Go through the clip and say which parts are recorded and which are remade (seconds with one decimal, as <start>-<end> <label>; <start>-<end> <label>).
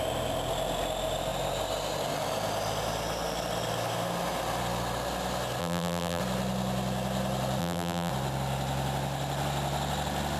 0.0-5.6 recorded; 5.6-6.2 remade; 6.2-7.6 recorded; 7.6-8.1 remade; 8.1-10.4 recorded